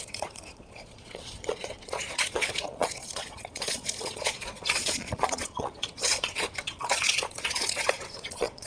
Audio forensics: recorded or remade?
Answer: remade